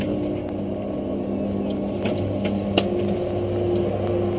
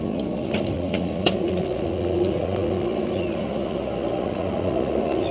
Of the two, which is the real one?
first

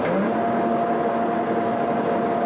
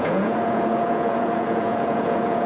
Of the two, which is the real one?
first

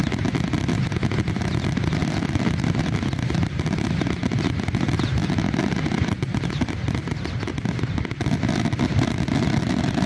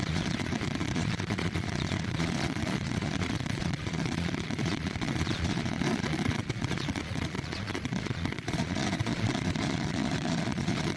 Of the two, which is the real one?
first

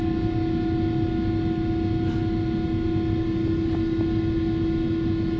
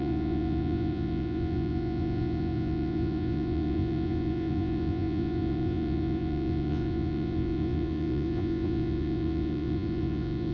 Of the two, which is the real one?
first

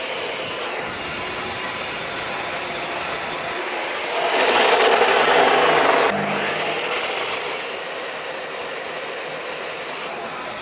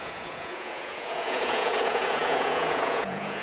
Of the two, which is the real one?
first